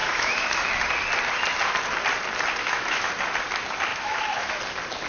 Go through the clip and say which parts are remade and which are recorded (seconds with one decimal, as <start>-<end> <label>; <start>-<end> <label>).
0.0-0.7 remade; 0.7-2.6 recorded; 2.6-3.1 remade; 3.1-3.9 recorded; 3.9-4.6 remade; 4.6-5.1 recorded

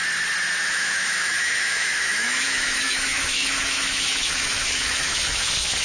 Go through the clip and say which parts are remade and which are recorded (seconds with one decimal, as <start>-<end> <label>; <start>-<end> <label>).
0.0-0.6 recorded; 0.6-5.8 remade

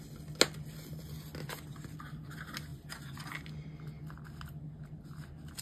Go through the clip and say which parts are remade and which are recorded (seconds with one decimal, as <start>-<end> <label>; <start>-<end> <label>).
0.0-5.6 recorded